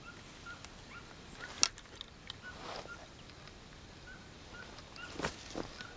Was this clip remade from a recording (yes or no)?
no